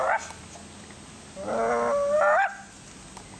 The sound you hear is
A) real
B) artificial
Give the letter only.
A